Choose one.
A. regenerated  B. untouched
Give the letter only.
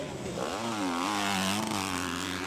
B